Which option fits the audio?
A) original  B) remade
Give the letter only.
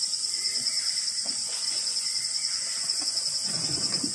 B